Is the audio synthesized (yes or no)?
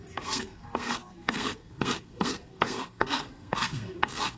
yes